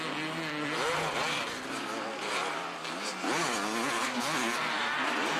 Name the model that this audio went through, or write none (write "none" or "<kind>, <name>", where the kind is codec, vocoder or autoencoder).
none